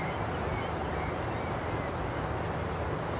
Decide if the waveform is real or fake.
real